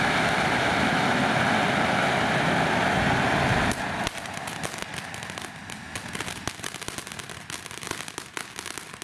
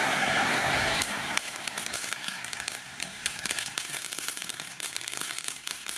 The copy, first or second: second